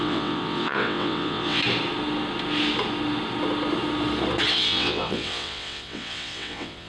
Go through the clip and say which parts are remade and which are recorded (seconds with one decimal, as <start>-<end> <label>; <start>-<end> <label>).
0.0-1.6 remade; 1.6-4.5 recorded; 4.5-6.9 remade